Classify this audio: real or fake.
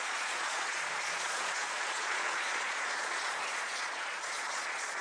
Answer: fake